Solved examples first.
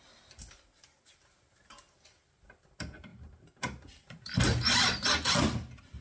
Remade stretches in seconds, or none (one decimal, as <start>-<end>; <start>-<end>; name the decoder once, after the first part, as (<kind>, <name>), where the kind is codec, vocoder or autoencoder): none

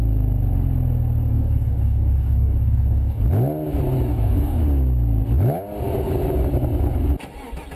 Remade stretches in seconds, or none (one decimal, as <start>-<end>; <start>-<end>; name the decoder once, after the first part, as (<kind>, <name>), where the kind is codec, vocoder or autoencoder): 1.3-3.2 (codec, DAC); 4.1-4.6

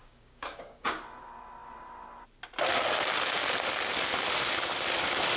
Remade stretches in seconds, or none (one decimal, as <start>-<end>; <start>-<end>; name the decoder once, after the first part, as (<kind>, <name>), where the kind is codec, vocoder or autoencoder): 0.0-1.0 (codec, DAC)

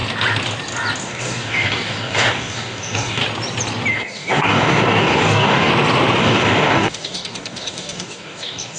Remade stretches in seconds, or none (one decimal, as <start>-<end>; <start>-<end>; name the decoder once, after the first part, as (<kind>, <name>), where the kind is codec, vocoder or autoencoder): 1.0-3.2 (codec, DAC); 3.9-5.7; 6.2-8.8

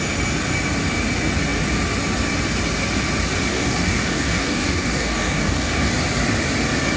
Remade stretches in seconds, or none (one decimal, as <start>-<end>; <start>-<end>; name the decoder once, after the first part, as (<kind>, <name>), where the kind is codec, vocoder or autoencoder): 3.5-5.9 (codec, DAC)

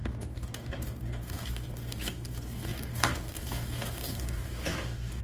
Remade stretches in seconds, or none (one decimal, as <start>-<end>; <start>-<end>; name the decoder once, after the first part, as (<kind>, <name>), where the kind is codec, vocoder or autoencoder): 0.0-5.2 (codec, DAC)

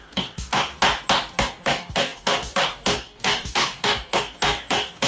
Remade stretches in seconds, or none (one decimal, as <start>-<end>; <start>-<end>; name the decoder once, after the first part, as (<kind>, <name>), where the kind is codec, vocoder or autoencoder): 0.0-0.7 (codec, DAC); 1.4-5.1